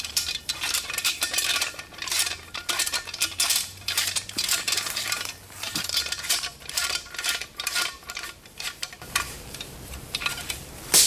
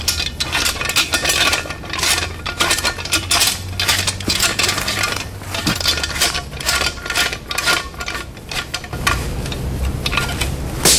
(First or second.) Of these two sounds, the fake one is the first